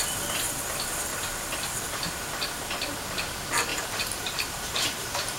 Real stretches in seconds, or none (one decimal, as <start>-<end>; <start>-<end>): 0.0-3.7